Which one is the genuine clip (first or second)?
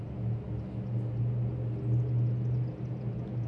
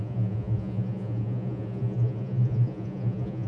first